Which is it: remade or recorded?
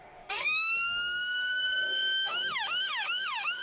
remade